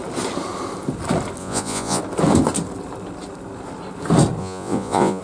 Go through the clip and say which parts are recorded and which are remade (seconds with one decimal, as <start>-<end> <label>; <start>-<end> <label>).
0.0-1.4 recorded; 1.4-2.0 remade; 2.0-4.4 recorded; 4.4-5.2 remade